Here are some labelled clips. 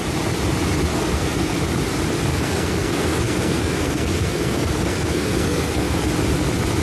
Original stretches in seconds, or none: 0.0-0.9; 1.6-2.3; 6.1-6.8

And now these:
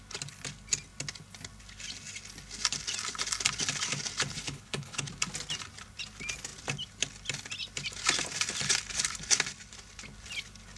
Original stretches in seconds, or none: 0.0-4.3; 5.1-10.8

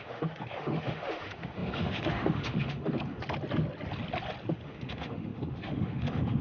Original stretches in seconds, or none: 3.2-4.5

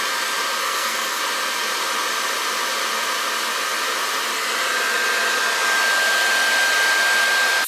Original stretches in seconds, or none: 0.0-0.6; 1.2-7.7

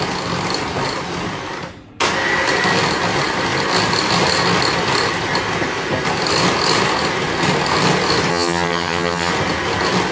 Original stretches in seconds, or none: 0.0-8.3; 9.3-10.1